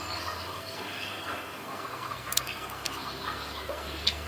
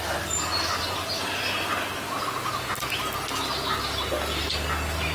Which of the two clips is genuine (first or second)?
second